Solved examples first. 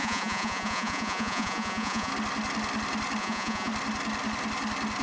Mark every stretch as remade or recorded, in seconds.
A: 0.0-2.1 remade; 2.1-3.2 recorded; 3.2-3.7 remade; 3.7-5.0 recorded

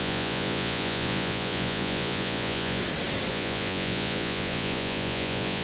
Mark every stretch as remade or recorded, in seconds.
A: 0.0-2.8 remade; 2.8-3.3 recorded; 3.3-5.6 remade

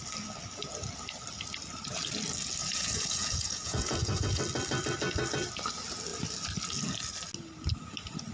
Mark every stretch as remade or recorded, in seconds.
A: 0.0-2.6 recorded; 2.6-4.4 remade; 4.4-8.3 recorded